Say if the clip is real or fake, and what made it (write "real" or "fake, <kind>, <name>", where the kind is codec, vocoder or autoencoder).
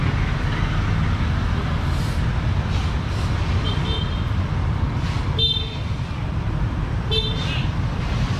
real